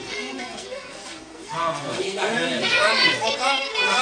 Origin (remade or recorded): remade